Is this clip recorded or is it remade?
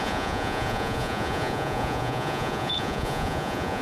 remade